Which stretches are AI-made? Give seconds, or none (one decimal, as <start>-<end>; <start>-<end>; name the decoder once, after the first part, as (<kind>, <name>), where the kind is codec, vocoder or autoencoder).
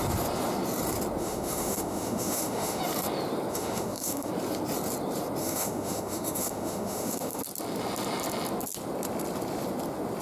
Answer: 1.2-2.8 (autoencoder, DAC-VAE); 3.5-4.3; 5.4-7.4